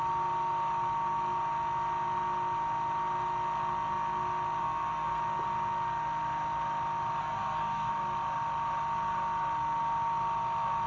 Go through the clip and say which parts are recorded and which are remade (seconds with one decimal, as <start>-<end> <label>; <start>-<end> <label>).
0.0-4.6 recorded; 4.6-5.2 remade; 5.2-7.2 recorded; 7.2-7.9 remade; 7.9-10.9 recorded